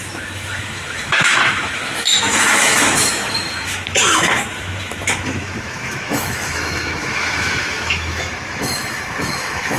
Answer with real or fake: fake